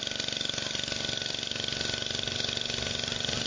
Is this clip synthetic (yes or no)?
no